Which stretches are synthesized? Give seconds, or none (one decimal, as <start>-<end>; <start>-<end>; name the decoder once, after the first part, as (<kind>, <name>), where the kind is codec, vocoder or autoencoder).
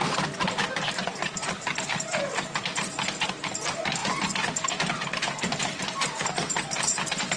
none